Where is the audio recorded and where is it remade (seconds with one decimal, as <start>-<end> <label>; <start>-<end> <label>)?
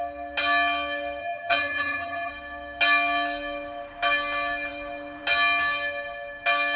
0.0-1.2 recorded; 1.2-2.3 remade; 2.3-6.8 recorded